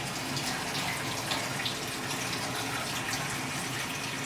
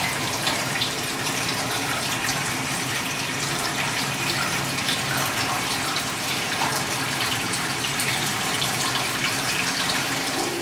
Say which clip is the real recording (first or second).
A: first